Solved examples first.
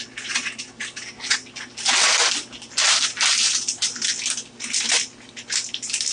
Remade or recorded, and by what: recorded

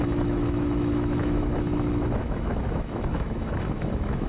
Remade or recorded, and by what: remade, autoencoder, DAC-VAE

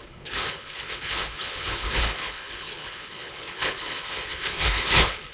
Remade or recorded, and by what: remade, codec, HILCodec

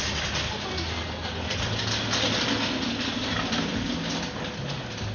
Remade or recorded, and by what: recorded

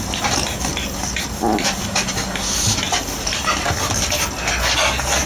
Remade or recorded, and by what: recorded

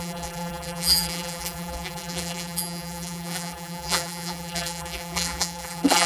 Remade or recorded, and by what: remade, vocoder, BigVGAN v2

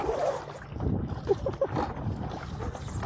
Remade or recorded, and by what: recorded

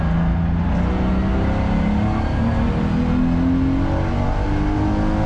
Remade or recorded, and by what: recorded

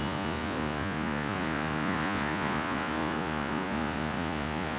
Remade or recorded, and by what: remade, vocoder, Vocos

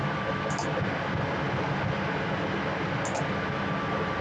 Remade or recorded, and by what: recorded